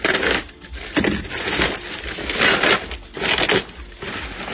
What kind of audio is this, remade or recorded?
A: recorded